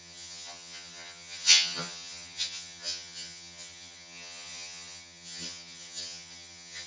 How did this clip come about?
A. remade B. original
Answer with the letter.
A